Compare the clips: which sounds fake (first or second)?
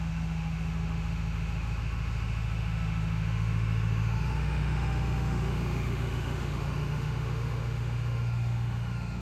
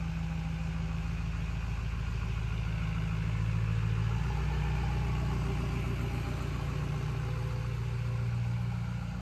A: first